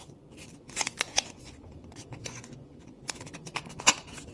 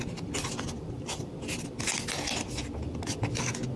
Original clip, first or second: second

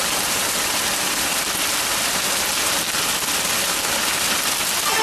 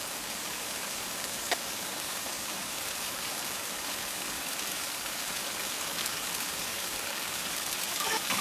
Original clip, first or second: first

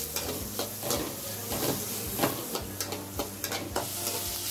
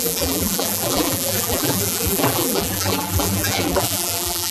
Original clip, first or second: first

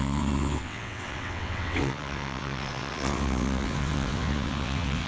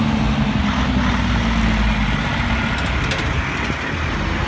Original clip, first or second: second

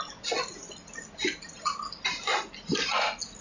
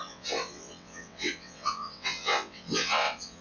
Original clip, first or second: first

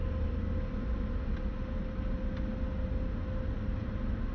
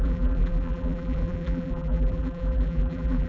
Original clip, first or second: first